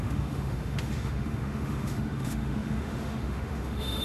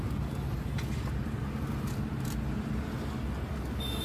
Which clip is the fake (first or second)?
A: first